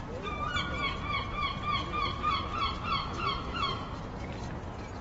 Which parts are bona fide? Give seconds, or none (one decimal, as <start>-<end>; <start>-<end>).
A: 0.0-3.0; 4.0-5.0